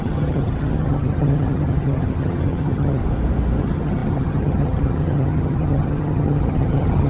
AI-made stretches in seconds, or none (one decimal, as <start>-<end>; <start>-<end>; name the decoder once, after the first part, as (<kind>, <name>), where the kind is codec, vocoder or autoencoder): 0.0-3.0 (vocoder, HiFi-GAN); 3.6-7.1

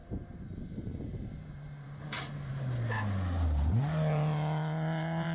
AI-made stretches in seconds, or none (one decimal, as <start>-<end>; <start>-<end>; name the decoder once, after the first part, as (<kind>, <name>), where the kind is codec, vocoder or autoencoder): 0.0-2.5 (vocoder, BigVGAN v2); 3.7-5.3

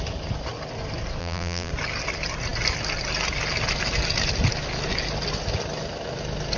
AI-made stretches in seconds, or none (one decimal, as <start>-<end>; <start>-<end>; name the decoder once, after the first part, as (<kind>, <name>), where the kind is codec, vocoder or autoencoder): 1.2-1.7 (vocoder, BigVGAN v2)

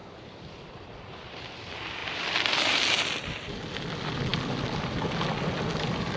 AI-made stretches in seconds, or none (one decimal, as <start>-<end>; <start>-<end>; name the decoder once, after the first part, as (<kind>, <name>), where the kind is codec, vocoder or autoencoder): 0.0-1.4 (vocoder, BigVGAN v2)

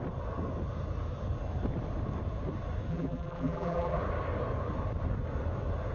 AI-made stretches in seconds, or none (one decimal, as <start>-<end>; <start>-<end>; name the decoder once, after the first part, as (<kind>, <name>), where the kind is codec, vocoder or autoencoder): 2.9-4.0 (vocoder, BigVGAN v2)

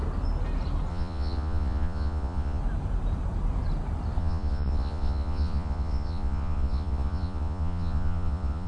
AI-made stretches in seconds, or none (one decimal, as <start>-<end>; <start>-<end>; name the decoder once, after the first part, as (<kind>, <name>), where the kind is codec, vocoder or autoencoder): 0.9-2.6 (vocoder, Vocos); 4.2-8.7

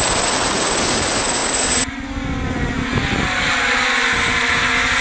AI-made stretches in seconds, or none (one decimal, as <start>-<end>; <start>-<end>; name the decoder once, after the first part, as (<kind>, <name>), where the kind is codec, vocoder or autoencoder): none